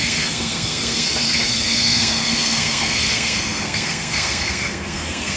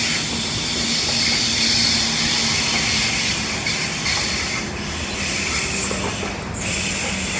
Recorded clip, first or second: second